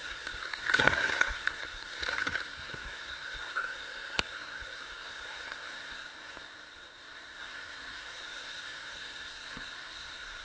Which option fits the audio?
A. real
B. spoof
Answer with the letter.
B